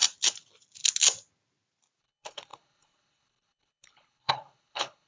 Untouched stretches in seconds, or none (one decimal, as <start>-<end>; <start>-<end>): 0.0-2.0